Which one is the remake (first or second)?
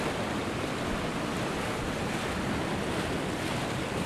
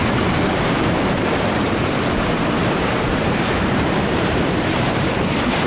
second